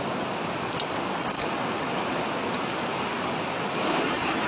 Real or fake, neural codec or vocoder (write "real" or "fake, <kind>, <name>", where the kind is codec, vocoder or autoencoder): real